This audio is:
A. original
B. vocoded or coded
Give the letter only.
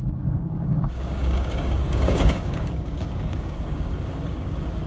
B